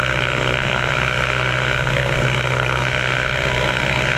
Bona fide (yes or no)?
no